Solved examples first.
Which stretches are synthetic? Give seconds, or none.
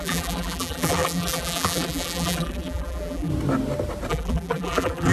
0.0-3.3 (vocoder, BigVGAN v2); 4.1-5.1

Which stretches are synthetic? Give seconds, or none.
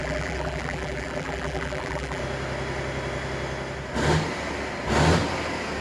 0.0-2.2 (vocoder, BigVGAN v2)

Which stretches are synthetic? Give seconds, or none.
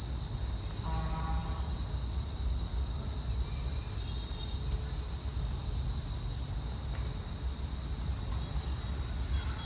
none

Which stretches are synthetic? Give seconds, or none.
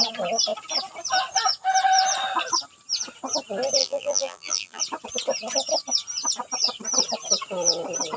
3.8-4.8 (vocoder, BigVGAN v2)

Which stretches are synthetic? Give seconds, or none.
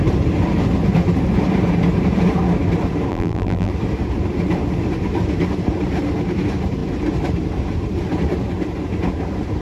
3.1-3.7 (vocoder, BigVGAN v2)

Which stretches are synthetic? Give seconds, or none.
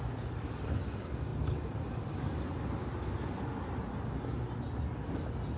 none